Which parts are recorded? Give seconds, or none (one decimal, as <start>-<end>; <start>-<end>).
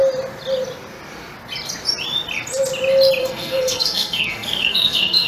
0.0-3.2